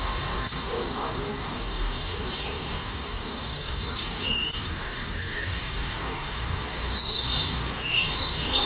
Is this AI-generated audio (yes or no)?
yes